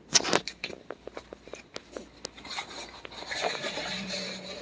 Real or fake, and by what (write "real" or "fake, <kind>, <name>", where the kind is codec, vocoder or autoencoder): real